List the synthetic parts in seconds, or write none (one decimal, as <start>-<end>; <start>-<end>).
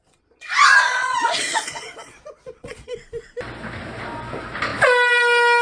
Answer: 0.0-2.9